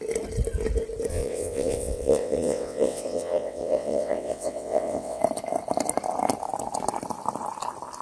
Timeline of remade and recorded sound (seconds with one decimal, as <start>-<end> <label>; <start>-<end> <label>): 0.0-1.1 recorded; 1.1-5.2 remade; 5.2-8.0 recorded